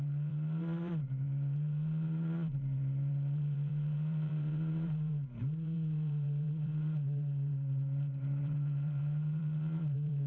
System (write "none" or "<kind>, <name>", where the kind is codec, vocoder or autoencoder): vocoder, BigVGAN v2